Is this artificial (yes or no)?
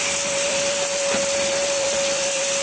yes